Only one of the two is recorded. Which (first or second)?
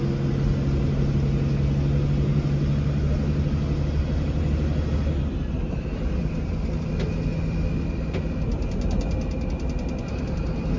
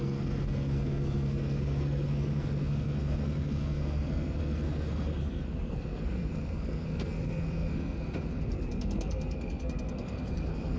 first